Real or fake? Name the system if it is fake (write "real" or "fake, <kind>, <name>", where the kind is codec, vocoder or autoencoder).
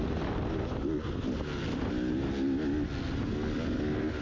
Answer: real